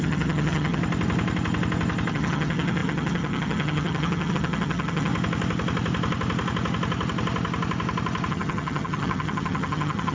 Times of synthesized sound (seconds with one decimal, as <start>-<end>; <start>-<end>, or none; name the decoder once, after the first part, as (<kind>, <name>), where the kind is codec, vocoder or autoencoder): 0.0-0.8 (vocoder, HiFi-GAN); 2.1-5.1; 8.3-10.1